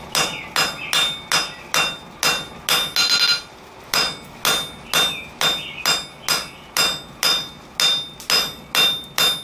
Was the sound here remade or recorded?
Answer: recorded